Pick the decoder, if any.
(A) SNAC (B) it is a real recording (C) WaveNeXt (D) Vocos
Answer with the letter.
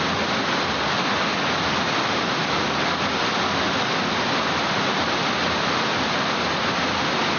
B